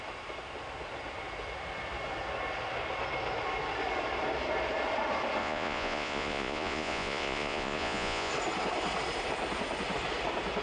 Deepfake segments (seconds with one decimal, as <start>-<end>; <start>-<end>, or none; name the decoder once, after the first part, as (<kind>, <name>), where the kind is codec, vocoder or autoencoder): 5.4-8.3 (vocoder, Vocos)